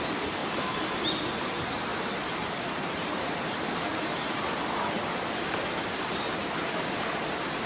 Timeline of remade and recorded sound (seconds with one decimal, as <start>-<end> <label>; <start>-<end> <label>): 0.0-0.4 remade; 0.4-1.2 recorded; 1.2-6.4 remade; 6.4-6.9 recorded; 6.9-7.7 remade